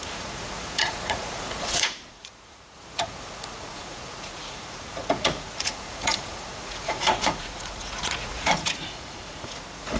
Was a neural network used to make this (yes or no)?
yes